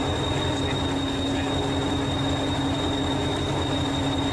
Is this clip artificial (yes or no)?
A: no